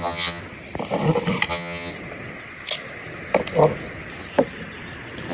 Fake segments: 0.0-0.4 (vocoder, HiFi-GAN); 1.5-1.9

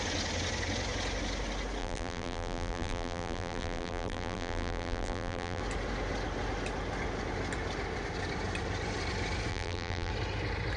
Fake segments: 1.8-5.6 (vocoder, BigVGAN v2); 9.5-10.1

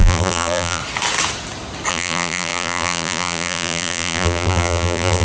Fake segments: 0.0-0.8 (vocoder, BigVGAN v2); 1.9-5.2

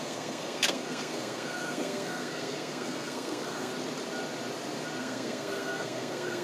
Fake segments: 0.0-3.7 (codec, SNAC); 5.0-6.4

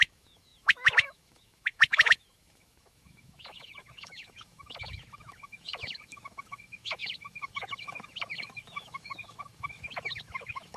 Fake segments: 0.0-10.8 (autoencoder, DAC-VAE)

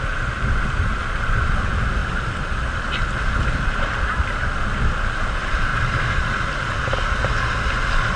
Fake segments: none

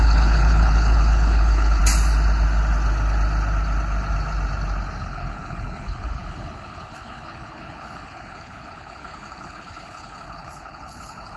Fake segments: 0.0-1.8 (codec, HILCodec); 5.0-11.4